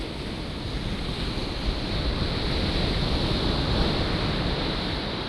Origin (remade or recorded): recorded